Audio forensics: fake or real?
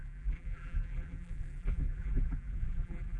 fake